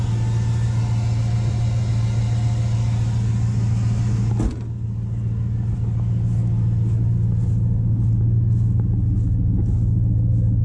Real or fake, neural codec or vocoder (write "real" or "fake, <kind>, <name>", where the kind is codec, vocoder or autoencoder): real